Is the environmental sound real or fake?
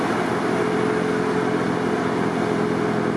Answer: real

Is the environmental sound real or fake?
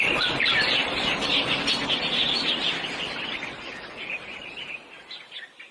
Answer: real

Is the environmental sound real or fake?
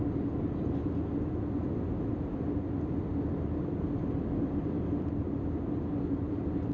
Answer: real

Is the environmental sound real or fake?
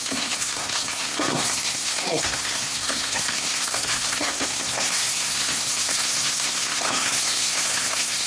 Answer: fake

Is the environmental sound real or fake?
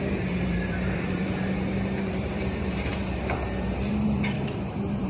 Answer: fake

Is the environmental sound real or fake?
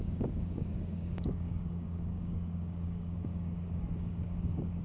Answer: fake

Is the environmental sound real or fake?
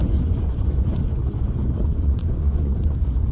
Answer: fake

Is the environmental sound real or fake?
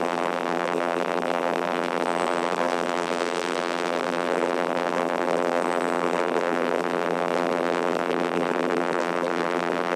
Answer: fake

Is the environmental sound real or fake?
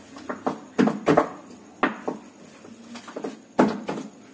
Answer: real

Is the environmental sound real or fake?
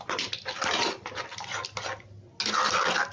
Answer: real